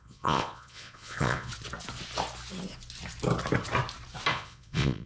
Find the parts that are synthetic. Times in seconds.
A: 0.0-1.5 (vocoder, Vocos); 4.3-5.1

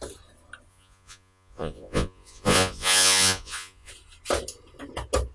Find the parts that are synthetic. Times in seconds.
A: 0.7-3.9 (vocoder, Vocos)

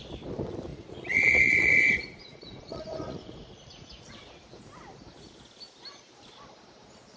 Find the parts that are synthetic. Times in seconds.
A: 0.7-4.0 (vocoder, Vocos)

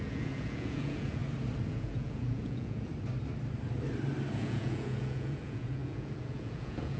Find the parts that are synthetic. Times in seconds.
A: 0.0-1.2 (vocoder, Vocos); 1.7-2.9; 4.3-7.0

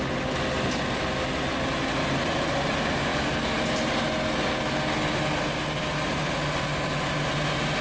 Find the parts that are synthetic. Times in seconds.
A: none

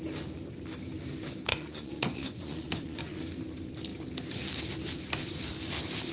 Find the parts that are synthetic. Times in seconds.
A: 1.5-3.2 (vocoder, Vocos)